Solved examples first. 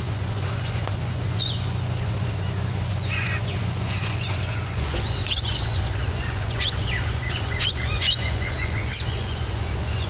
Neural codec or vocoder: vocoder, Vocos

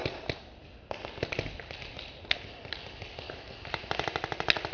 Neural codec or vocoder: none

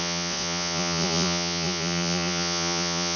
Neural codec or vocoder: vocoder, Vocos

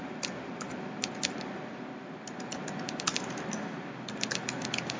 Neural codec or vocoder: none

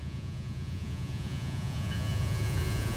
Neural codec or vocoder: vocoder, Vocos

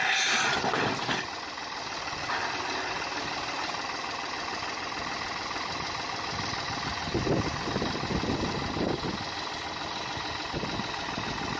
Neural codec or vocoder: none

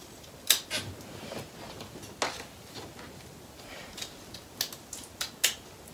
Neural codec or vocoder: none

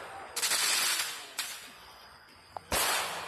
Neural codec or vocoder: vocoder, Vocos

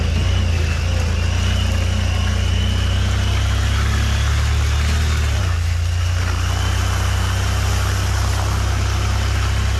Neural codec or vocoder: none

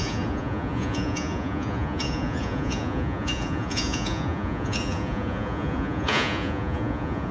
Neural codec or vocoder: vocoder, Vocos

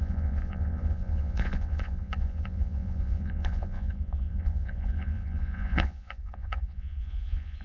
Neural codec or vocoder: vocoder, Vocos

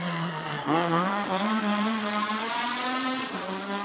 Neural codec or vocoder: vocoder, Vocos